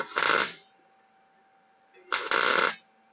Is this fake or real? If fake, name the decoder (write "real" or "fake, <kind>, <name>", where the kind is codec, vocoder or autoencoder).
fake, vocoder, BigVGAN v2